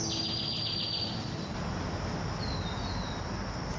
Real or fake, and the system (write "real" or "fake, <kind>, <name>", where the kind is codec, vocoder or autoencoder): real